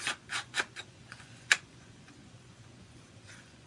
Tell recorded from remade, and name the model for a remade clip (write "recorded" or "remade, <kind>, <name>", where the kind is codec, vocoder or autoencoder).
remade, vocoder, Vocos